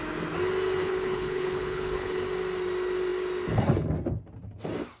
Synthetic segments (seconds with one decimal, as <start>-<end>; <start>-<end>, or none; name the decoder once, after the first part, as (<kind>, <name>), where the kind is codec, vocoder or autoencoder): 0.8-2.2 (codec, HILCodec)